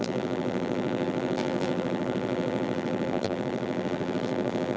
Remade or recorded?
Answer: remade